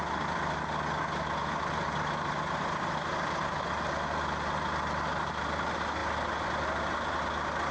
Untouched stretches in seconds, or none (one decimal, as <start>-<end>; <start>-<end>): 0.0-7.7